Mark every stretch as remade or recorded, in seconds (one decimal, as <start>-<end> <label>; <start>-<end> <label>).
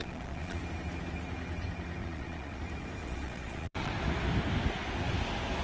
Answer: 0.0-0.6 remade; 0.6-2.0 recorded; 2.0-2.6 remade; 2.6-3.0 recorded; 3.0-3.9 remade; 3.9-5.6 recorded